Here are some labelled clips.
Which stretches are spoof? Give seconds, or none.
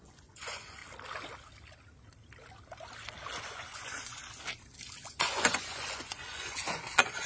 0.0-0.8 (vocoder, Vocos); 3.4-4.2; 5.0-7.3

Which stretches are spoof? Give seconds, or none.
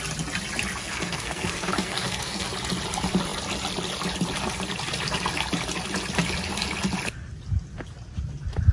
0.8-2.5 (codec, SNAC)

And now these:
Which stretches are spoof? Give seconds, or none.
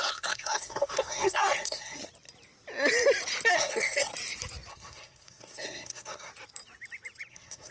0.0-2.0 (codec, SNAC); 3.5-4.1; 4.7-6.3; 7.3-7.7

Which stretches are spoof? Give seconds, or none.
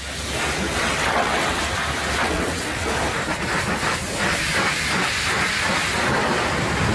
0.7-1.6 (vocoder, WaveNeXt); 2.2-2.9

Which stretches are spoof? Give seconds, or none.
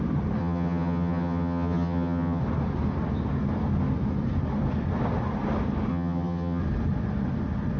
0.4-2.4 (vocoder, HiFi-GAN); 5.9-6.6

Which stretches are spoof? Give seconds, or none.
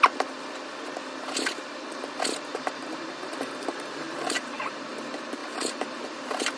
2.5-4.9 (vocoder, BigVGAN v2); 5.4-6.0